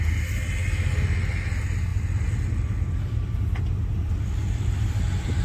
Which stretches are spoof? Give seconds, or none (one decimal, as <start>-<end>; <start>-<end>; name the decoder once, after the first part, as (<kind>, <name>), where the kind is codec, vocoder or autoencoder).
none